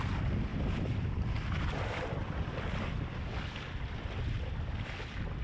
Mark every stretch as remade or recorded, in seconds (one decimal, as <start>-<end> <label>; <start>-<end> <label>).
0.0-5.4 recorded